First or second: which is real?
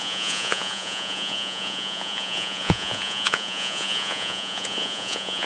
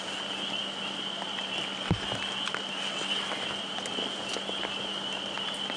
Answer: second